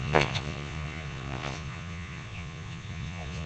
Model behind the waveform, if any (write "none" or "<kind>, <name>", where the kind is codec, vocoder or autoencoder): vocoder, Vocos